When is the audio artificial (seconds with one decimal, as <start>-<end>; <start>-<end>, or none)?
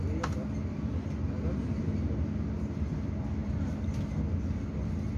none